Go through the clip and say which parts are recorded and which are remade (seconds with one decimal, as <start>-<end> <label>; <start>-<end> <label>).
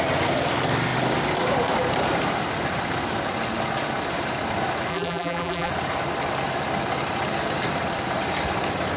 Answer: 0.0-4.9 recorded; 4.9-5.7 remade; 5.7-9.0 recorded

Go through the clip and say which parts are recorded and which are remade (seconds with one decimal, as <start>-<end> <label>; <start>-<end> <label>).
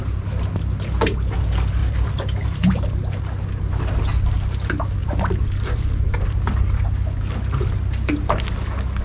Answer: 0.0-1.8 recorded; 1.8-2.8 remade; 2.8-5.0 recorded; 5.0-6.5 remade; 6.5-9.0 recorded